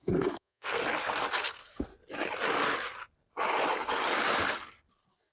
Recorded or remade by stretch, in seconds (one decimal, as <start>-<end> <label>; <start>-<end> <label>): 0.0-0.8 remade; 0.8-1.4 recorded; 1.4-1.9 remade; 1.9-5.3 recorded